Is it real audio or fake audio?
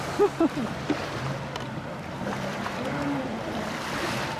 fake